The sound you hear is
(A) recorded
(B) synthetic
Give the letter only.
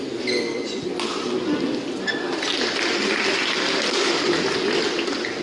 A